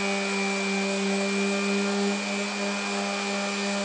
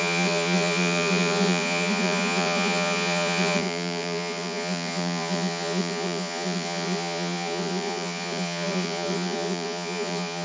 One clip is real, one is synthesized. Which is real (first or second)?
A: first